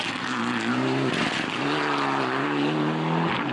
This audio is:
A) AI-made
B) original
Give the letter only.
B